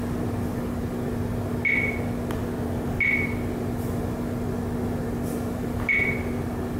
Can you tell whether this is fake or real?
real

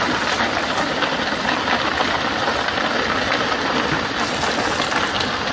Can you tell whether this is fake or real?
real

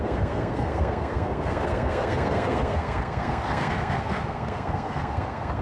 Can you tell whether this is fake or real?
fake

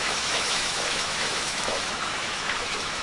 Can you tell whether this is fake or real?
fake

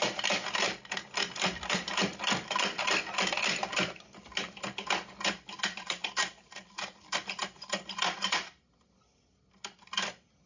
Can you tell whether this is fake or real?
real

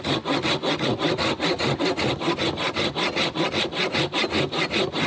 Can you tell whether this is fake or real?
real